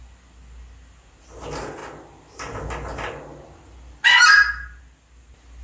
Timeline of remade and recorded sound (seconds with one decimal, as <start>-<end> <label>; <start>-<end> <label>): 0.0-5.6 recorded